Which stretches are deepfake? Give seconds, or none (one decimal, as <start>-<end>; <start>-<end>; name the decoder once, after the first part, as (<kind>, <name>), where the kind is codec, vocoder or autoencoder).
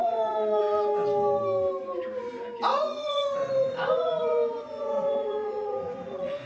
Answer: 0.0-0.6 (vocoder, Vocos); 2.7-6.5